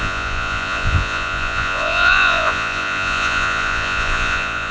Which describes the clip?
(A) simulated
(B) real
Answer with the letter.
A